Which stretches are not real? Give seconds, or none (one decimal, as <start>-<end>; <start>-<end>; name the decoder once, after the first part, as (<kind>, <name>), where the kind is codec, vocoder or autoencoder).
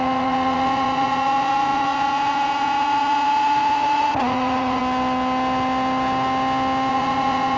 0.0-4.8 (vocoder, Vocos); 6.9-7.6